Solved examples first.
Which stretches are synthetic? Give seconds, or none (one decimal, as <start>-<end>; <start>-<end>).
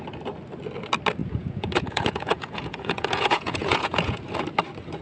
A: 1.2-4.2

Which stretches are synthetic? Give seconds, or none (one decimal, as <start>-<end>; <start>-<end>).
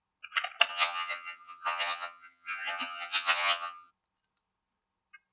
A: 0.7-3.9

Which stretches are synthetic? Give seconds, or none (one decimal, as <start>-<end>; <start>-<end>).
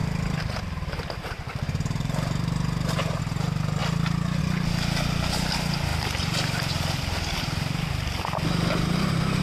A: 0.0-3.2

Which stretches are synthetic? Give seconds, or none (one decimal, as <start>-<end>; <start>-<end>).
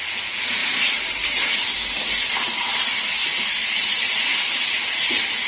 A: none